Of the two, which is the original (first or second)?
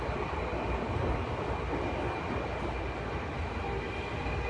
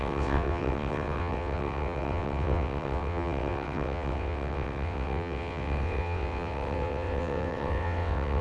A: first